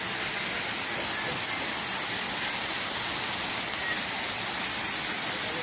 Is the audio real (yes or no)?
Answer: yes